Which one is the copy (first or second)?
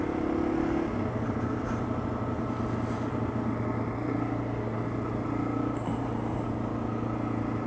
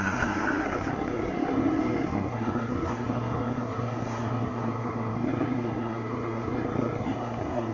second